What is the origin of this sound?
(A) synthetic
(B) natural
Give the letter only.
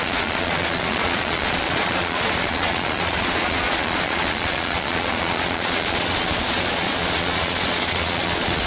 A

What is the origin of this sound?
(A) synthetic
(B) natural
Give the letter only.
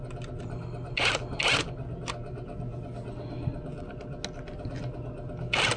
B